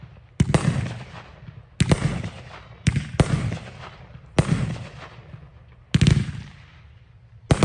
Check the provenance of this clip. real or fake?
real